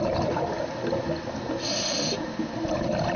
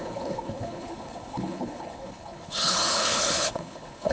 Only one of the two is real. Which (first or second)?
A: first